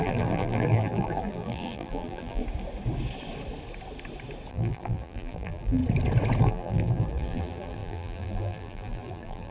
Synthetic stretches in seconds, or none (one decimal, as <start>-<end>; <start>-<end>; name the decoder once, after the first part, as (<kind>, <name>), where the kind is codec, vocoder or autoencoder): 0.0-2.4 (vocoder, BigVGAN v2); 4.5-5.8; 6.4-9.5